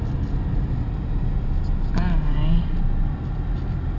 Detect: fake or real real